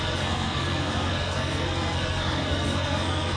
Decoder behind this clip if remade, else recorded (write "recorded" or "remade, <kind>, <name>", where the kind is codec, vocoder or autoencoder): remade, codec, SNAC